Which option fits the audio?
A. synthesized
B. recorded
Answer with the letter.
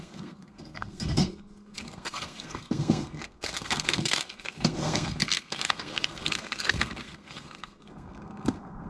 A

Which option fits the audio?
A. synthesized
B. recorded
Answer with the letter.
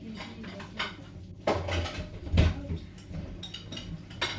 B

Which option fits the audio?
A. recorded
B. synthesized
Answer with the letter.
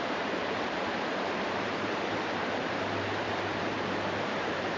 B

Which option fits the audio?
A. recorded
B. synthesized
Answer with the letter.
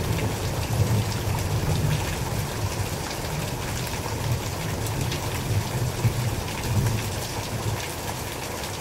A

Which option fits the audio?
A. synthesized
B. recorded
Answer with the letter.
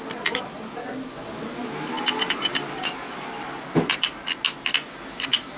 B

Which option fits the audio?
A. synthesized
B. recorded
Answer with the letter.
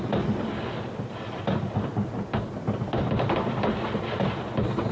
B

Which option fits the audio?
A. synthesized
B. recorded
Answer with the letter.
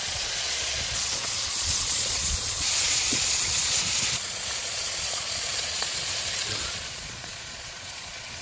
A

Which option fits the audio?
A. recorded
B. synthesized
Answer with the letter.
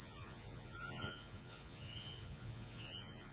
B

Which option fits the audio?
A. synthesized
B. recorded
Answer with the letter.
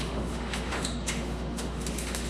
A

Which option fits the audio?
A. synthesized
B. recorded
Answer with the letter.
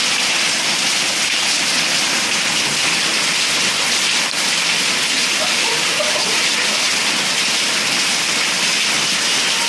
B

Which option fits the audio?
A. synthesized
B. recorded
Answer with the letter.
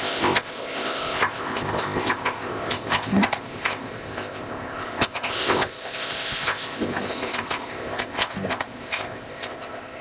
A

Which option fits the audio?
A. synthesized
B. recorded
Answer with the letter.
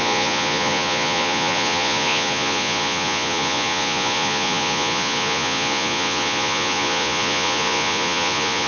A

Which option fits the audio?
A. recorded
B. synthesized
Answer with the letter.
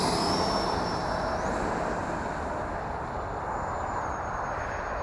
A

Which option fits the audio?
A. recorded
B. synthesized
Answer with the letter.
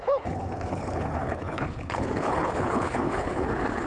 B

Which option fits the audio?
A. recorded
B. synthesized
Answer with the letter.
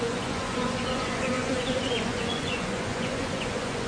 B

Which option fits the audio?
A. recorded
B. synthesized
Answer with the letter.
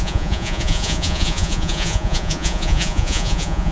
B